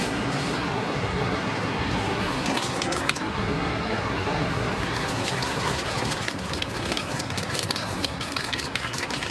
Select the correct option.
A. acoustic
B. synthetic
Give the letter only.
B